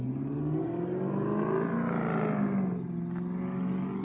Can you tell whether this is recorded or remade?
recorded